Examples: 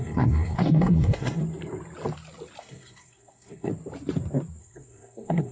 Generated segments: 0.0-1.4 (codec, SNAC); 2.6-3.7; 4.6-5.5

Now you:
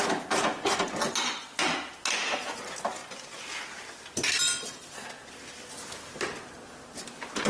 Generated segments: none

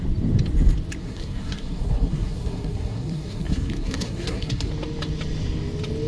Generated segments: 1.0-4.7 (codec, SNAC)

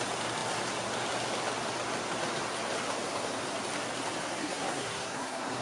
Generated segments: 4.4-5.6 (codec, SNAC)